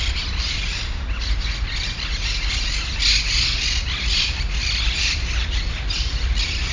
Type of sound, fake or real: real